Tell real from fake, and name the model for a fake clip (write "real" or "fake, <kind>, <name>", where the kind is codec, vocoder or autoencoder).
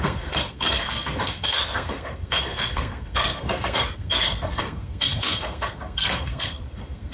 fake, codec, SNAC